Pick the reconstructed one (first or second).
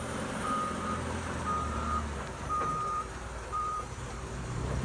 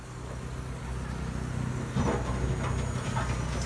first